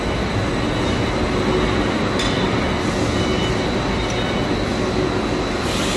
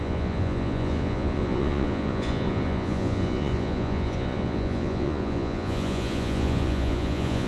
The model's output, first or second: second